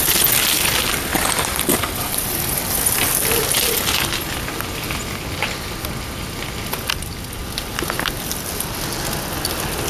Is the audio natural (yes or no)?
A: yes